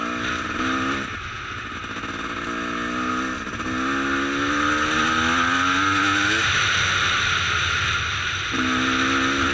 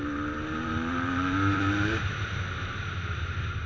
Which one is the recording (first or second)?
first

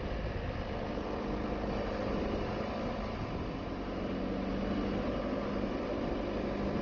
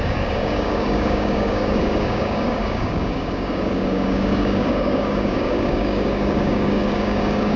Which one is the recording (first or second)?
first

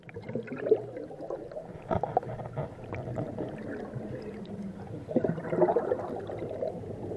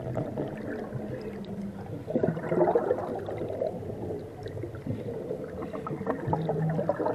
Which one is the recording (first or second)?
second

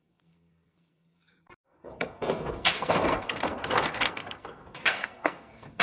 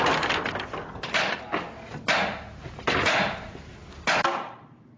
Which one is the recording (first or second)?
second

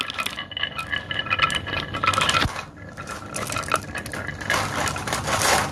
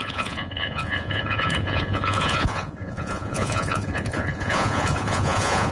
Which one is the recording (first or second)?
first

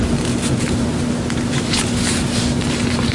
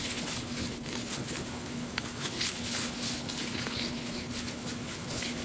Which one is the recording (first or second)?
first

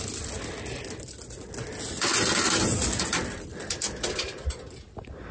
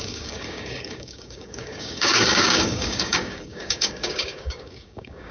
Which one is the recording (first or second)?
first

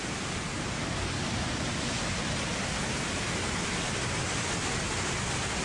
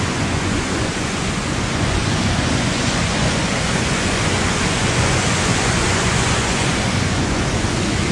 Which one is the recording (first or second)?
first